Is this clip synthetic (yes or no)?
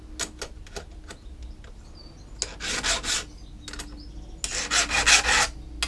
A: no